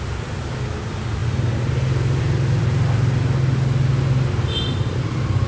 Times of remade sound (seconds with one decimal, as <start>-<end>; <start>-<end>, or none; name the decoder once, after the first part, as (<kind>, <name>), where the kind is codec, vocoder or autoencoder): none